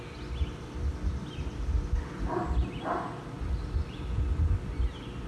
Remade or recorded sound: recorded